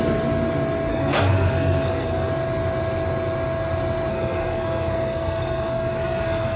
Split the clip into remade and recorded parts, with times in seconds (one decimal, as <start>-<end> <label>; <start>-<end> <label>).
0.0-0.9 recorded; 0.9-2.3 remade; 2.3-4.1 recorded; 4.1-6.6 remade